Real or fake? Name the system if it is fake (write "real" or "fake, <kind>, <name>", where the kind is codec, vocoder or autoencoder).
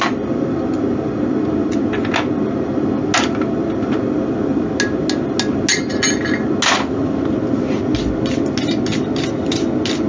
real